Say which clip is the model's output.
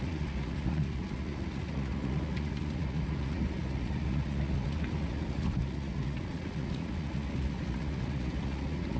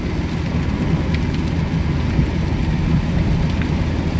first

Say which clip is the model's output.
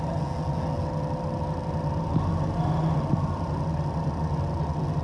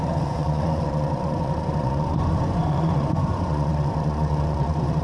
second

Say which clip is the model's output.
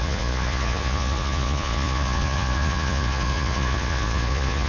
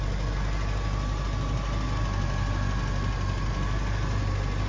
first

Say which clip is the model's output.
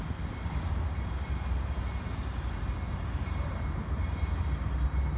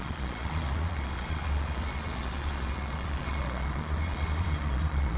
second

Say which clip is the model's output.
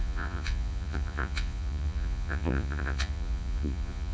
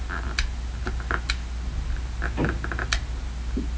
first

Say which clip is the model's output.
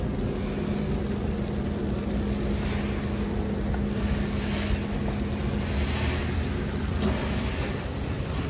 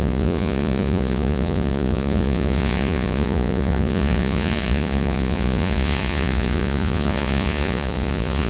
second